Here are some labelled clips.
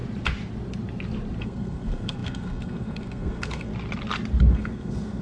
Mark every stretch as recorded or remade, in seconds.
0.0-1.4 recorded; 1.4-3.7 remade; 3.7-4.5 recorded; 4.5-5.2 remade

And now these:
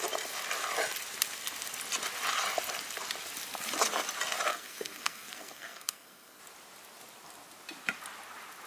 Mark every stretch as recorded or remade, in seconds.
0.0-4.5 recorded; 4.5-6.4 remade; 6.4-8.7 recorded

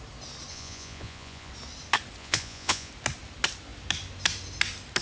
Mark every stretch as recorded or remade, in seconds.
0.0-0.5 recorded; 0.5-1.5 remade; 1.5-2.2 recorded; 2.2-2.9 remade; 2.9-5.0 recorded

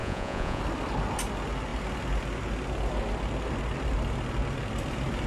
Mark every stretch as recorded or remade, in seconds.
0.0-0.6 remade; 0.6-5.3 recorded

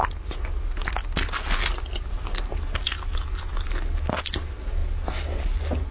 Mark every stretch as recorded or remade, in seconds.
0.0-5.9 recorded

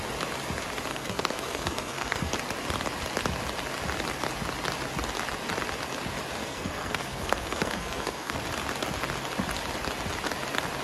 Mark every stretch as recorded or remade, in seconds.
0.0-0.9 recorded; 0.9-2.3 remade; 2.3-6.4 recorded; 6.4-8.4 remade; 8.4-10.8 recorded